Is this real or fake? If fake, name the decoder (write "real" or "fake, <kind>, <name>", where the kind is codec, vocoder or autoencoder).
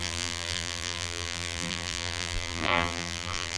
fake, vocoder, BigVGAN v2